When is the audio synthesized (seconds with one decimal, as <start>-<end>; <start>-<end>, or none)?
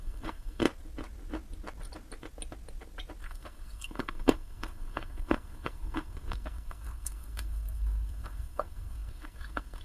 0.0-0.6; 3.2-9.8